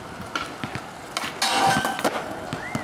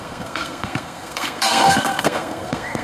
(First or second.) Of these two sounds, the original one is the first